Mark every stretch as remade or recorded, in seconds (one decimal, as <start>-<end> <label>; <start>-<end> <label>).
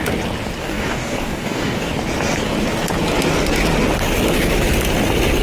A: 0.0-0.6 recorded; 0.6-1.9 remade; 1.9-5.4 recorded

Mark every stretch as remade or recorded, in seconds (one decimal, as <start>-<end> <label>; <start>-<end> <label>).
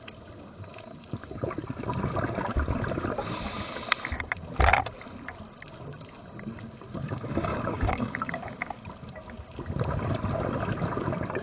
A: 0.0-7.0 recorded; 7.0-8.6 remade; 8.6-11.4 recorded